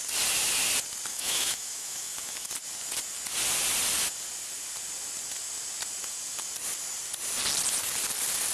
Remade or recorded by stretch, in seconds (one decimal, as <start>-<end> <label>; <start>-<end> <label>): 0.0-1.1 recorded; 1.1-2.5 remade; 2.5-8.5 recorded